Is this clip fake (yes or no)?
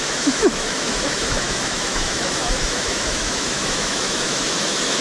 yes